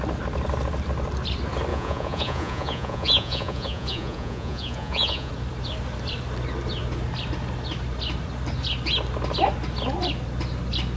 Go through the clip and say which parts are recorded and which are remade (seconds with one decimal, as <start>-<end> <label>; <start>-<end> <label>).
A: 0.0-1.7 recorded; 1.7-5.3 remade; 5.3-11.0 recorded